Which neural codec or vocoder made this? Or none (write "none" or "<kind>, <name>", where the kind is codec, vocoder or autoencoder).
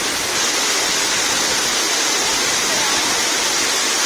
none